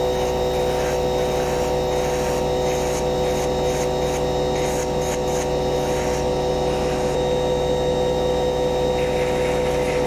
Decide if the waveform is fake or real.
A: real